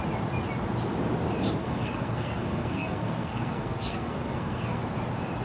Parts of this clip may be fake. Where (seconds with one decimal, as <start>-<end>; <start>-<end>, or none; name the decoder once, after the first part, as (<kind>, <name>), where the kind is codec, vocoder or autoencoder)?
1.6-4.8 (codec, SNAC)